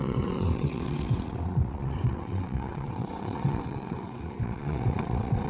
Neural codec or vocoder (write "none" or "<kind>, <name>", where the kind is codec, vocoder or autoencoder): vocoder, WaveNeXt